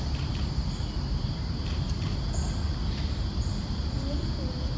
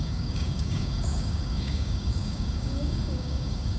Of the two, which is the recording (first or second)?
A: first